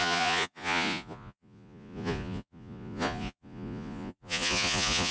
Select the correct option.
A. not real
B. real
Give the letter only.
A